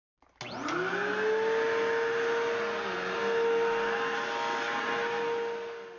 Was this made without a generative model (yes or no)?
yes